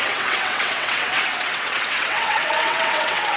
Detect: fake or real fake